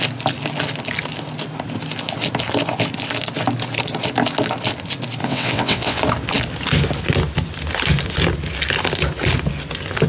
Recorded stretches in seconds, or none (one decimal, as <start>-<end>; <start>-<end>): 0.0-5.2; 6.0-10.1